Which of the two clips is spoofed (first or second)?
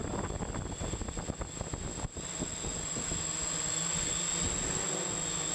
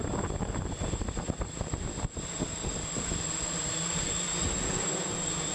second